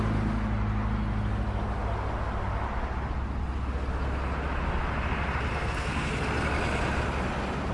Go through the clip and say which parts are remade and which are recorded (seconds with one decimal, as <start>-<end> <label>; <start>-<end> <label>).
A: 0.0-5.5 recorded; 5.5-6.1 remade; 6.1-7.7 recorded